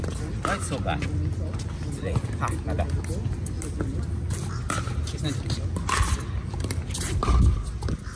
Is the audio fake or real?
real